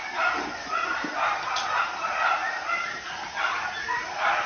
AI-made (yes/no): no